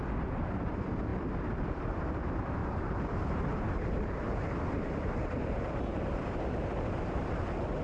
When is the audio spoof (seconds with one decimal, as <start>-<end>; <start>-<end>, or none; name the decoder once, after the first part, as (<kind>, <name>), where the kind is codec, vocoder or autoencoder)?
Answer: 2.6-7.3 (vocoder, BigVGAN v2)